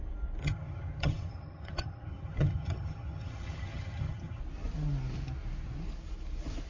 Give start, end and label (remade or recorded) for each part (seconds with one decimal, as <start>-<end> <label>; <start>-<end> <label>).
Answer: 0.0-0.4 recorded; 0.4-4.4 remade; 4.4-6.7 recorded

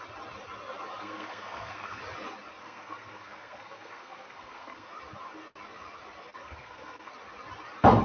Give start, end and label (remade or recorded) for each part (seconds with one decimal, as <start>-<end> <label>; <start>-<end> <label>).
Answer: 0.0-1.0 recorded; 1.0-2.0 remade; 2.0-2.6 recorded; 2.6-4.9 remade; 4.9-6.4 recorded; 6.4-7.1 remade; 7.1-8.0 recorded